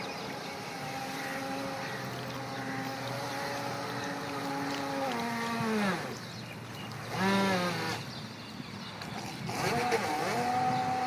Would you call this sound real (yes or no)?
yes